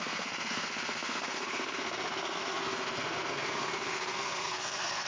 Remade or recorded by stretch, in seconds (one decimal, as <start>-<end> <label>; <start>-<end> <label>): 0.0-5.1 remade